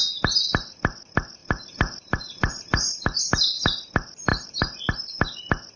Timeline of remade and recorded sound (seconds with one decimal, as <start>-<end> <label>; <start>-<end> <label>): 0.0-1.4 recorded; 1.4-3.2 remade; 3.2-4.3 recorded; 4.3-4.9 remade; 4.9-5.8 recorded